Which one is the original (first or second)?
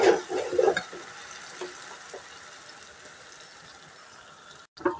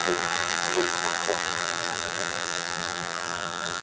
first